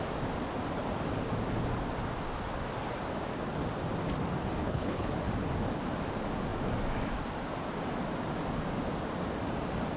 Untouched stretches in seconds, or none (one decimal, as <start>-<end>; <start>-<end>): 0.0-4.6; 5.1-10.0